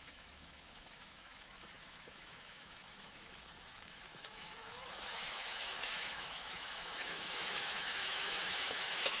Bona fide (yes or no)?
no